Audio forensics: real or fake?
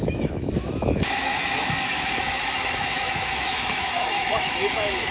fake